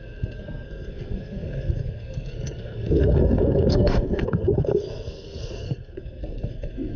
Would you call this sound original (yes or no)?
no